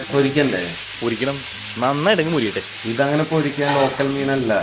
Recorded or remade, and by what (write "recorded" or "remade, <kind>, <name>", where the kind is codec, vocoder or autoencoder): recorded